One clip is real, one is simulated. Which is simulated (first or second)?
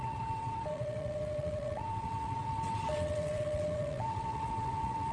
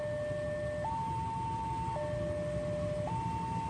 first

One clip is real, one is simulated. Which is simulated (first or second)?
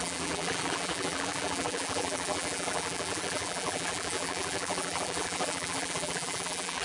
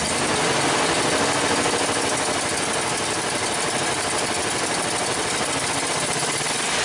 first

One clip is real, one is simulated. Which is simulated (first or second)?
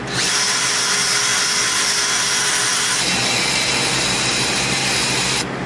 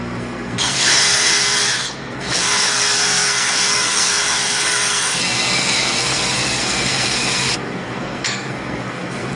second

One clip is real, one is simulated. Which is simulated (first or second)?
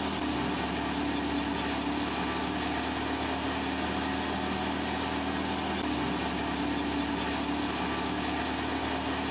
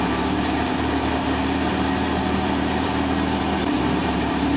second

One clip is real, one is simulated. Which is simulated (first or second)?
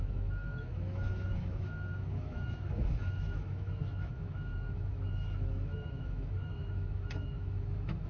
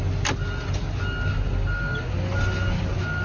first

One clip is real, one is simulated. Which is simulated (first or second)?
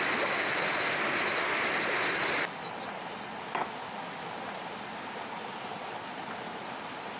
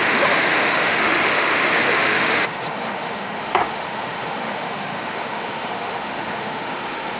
second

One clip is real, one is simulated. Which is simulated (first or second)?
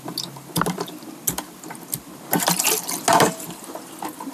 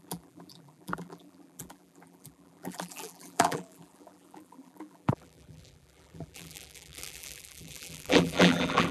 second